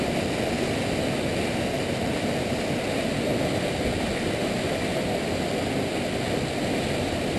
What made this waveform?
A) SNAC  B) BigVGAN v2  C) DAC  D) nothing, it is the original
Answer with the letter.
D